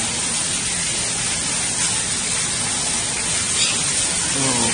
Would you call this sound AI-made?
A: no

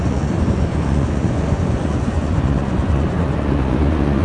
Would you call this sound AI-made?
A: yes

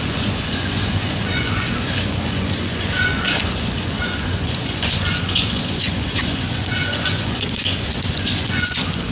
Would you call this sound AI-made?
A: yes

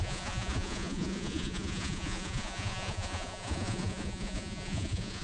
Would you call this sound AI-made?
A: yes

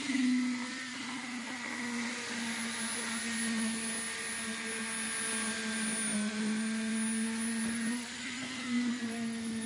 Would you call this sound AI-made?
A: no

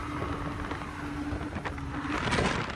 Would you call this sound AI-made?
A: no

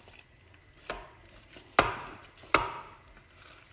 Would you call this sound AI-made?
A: no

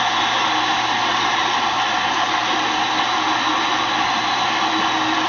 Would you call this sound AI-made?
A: no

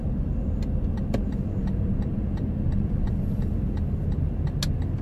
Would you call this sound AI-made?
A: no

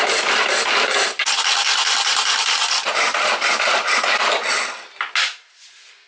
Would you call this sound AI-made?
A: no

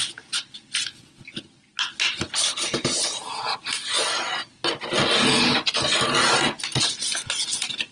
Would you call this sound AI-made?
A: no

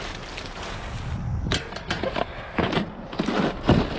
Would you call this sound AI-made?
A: no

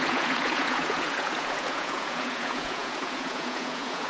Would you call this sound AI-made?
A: yes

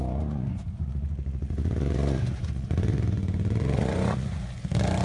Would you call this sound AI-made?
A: yes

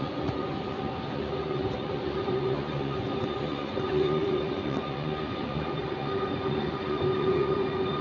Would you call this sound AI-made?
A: yes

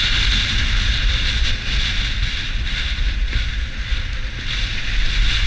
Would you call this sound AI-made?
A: no